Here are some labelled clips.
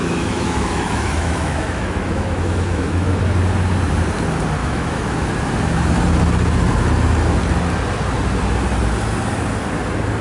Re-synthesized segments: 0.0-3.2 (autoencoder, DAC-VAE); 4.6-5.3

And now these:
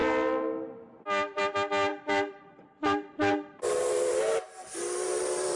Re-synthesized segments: 1.9-5.6 (vocoder, BigVGAN v2)

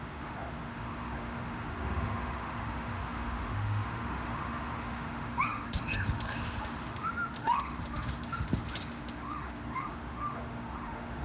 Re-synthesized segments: 0.0-11.2 (autoencoder, DAC-VAE)

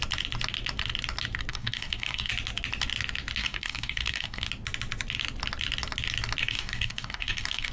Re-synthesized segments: 1.5-2.3 (codec, DAC); 3.4-4.5; 6.4-7.7